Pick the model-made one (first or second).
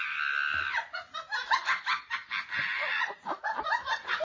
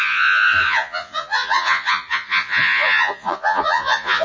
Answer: second